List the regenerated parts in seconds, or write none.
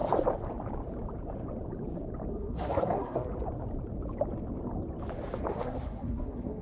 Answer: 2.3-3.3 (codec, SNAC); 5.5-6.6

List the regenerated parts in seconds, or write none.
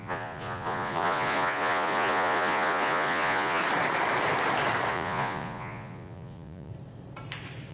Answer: 0.0-3.6 (vocoder, Vocos); 4.9-6.7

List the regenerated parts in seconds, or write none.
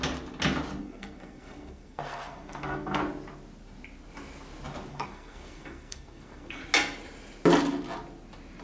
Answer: 0.8-3.0 (codec, SNAC); 4.9-6.6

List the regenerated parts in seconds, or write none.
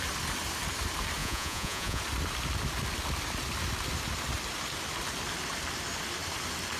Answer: 1.2-2.0 (vocoder, Vocos)